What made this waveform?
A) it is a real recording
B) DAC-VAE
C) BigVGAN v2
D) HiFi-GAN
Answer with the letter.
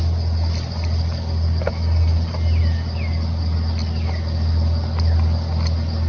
A